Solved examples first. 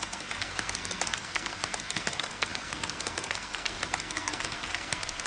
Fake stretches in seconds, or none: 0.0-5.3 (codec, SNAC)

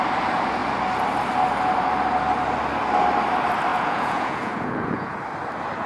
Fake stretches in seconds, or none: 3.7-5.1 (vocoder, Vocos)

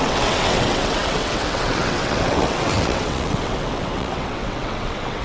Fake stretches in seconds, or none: 0.0-5.2 (vocoder, WaveNeXt)

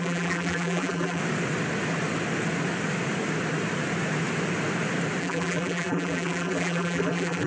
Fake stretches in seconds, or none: 0.0-1.2 (vocoder, BigVGAN v2); 5.2-7.5

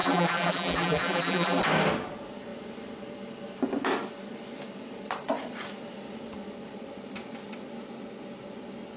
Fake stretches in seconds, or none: 0.0-1.6 (vocoder, BigVGAN v2)

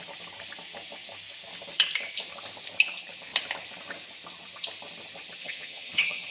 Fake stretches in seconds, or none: 5.4-6.3 (vocoder, HiFi-GAN)